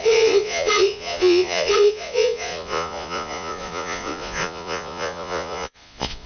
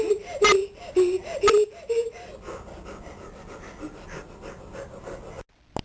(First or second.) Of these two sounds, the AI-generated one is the first